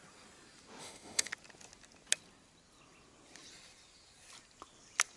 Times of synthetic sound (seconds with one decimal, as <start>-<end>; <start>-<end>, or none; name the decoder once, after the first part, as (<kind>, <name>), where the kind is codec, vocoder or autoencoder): 0.8-1.3 (autoencoder, DAC-VAE)